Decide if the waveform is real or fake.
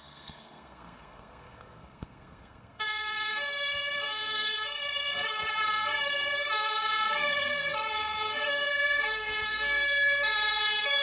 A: fake